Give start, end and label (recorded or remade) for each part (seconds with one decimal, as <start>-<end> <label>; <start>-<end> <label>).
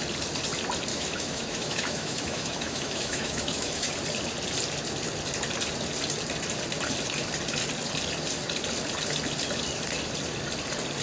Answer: 0.0-0.9 recorded; 0.9-3.9 remade; 3.9-11.0 recorded